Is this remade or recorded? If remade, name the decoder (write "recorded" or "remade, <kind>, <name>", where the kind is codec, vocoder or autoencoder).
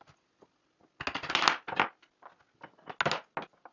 recorded